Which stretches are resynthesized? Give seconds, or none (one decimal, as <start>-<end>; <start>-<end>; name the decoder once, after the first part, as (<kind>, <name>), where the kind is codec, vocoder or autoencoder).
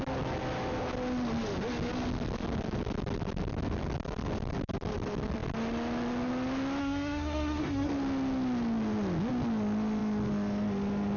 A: 6.8-7.9 (codec, SNAC)